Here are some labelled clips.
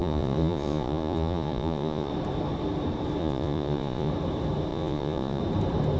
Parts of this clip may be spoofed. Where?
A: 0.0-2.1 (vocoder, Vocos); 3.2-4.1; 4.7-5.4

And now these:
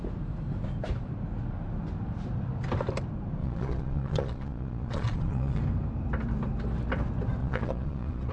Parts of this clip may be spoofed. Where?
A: 3.4-5.6 (vocoder, Vocos); 7.4-8.3

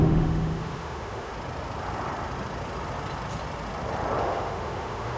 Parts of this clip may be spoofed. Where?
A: 0.0-1.3 (autoencoder, DAC-VAE); 4.2-5.2